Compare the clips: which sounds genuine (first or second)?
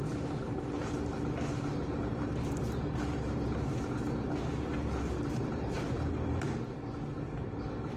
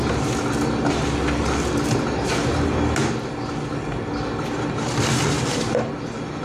second